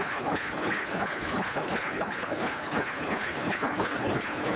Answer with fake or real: fake